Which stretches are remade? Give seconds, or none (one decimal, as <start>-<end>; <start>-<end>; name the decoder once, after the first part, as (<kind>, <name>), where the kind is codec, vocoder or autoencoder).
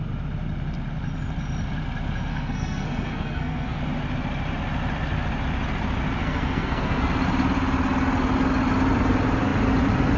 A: 2.3-3.8 (codec, SNAC); 6.2-7.1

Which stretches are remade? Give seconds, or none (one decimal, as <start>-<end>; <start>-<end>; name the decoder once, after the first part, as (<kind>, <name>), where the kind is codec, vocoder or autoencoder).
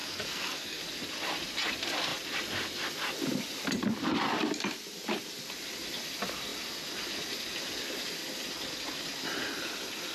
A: 0.0-0.8 (codec, SNAC)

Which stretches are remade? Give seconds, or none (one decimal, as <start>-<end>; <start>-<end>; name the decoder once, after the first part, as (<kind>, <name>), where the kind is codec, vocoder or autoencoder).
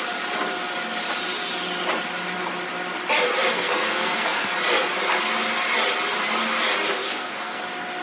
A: 3.5-4.5 (codec, SNAC); 7.0-7.6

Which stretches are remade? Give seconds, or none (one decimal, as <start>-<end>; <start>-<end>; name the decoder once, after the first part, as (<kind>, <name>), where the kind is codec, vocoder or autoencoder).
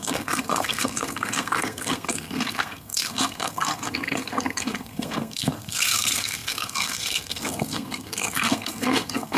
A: 0.0-9.4 (codec, SNAC)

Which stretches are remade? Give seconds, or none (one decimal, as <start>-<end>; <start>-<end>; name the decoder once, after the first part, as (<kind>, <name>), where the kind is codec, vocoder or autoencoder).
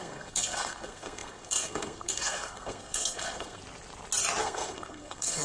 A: 0.0-3.6 (codec, SNAC); 4.4-5.4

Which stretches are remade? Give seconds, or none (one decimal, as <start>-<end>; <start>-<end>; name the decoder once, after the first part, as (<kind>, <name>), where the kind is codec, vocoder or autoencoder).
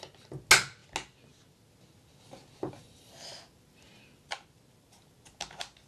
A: none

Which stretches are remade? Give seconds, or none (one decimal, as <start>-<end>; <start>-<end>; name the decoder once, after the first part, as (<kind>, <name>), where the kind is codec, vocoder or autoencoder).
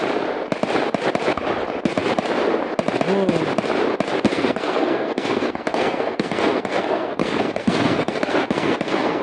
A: 4.3-9.2 (codec, SNAC)